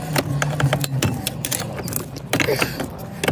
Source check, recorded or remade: recorded